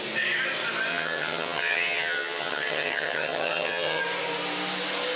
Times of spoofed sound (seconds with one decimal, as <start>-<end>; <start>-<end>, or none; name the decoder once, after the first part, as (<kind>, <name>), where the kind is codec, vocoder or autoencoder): 0.9-4.0 (vocoder, HiFi-GAN)